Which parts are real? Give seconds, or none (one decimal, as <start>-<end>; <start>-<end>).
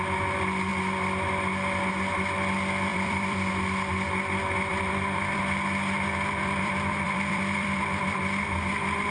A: 0.0-2.9; 3.5-4.7; 5.4-6.4; 8.2-9.1